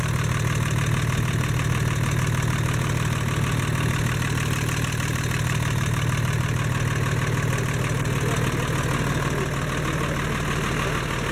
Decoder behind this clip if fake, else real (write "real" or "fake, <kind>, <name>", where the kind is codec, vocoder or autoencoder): real